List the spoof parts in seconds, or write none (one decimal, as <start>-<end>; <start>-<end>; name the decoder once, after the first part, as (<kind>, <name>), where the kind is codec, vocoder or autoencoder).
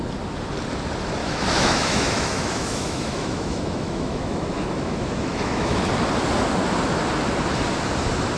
1.2-5.8 (autoencoder, DAC-VAE)